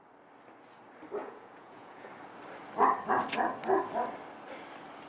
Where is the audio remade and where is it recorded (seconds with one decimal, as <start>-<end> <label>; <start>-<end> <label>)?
0.0-1.2 recorded; 1.2-2.1 remade; 2.1-5.1 recorded